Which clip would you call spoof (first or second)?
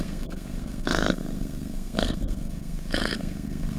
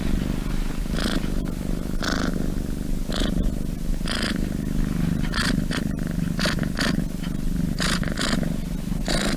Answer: first